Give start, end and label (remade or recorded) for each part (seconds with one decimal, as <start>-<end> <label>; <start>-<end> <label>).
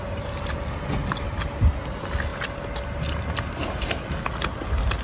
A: 0.0-5.0 recorded